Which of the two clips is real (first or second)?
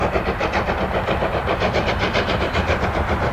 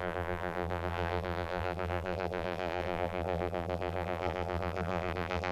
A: first